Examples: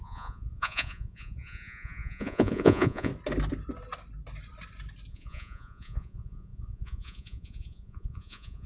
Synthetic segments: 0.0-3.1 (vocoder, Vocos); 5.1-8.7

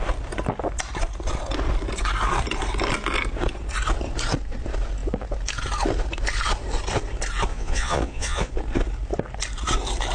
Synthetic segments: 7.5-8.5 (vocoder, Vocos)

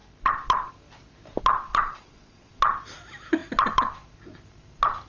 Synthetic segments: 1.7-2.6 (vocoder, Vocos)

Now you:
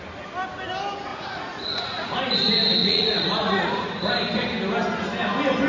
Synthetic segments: 1.1-2.2 (vocoder, Vocos); 2.8-4.1